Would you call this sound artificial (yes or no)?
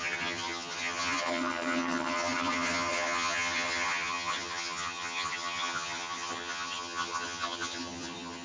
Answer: yes